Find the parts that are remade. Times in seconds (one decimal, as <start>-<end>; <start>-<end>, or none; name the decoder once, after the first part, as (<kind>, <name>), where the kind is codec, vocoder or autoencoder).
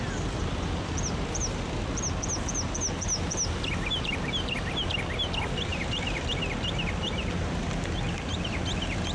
5.7-6.3 (vocoder, BigVGAN v2)